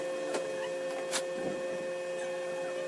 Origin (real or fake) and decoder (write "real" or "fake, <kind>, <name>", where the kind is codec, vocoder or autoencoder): real